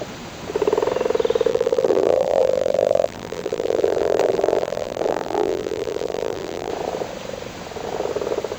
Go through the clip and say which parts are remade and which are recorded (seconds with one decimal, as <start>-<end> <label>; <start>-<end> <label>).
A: 0.0-1.5 recorded; 1.5-6.7 remade; 6.7-8.6 recorded

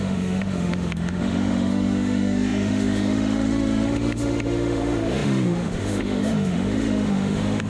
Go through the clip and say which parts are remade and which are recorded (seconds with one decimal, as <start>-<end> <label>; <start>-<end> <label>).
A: 0.0-7.7 remade

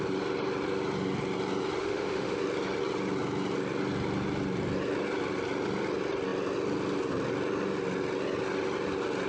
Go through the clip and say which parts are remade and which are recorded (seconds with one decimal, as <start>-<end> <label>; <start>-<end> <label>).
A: 0.0-1.8 recorded; 1.8-2.4 remade; 2.4-9.3 recorded

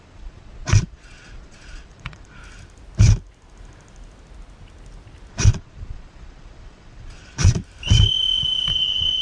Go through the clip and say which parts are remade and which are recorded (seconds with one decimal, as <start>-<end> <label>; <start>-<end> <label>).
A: 0.0-2.4 remade; 2.4-5.3 recorded; 5.3-7.6 remade; 7.6-8.7 recorded; 8.7-9.2 remade

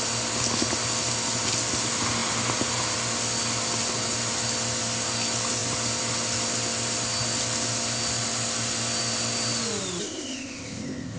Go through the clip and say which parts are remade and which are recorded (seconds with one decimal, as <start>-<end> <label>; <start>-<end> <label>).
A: 0.0-10.0 recorded; 10.0-11.2 remade